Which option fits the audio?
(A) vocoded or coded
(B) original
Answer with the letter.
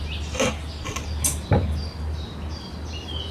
B